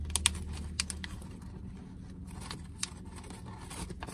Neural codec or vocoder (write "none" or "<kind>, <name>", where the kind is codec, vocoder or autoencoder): none